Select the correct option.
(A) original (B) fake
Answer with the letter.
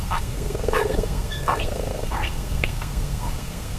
B